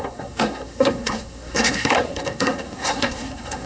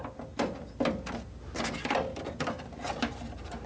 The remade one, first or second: first